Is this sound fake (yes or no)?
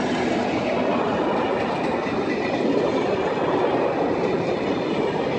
no